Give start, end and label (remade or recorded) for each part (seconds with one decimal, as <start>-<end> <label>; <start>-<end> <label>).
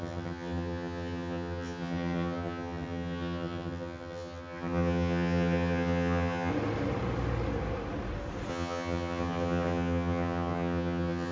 0.0-6.5 remade; 6.5-8.5 recorded; 8.5-11.3 remade